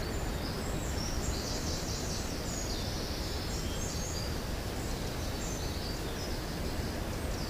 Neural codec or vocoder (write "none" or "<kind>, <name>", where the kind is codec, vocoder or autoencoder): none